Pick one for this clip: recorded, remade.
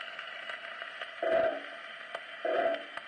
recorded